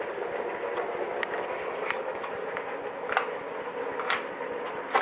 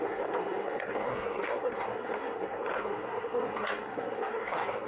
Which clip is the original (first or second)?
first